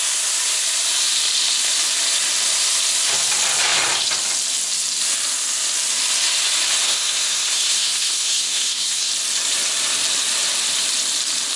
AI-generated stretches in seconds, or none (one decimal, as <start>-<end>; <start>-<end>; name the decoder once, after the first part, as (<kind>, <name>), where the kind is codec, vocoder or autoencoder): 6.8-9.1 (codec, SNAC)